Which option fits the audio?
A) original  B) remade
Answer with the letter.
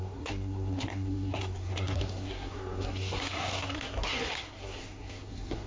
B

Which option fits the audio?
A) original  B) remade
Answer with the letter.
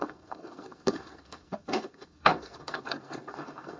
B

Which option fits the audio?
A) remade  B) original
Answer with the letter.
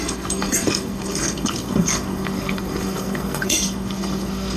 A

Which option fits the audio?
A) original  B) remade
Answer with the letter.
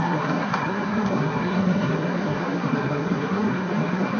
B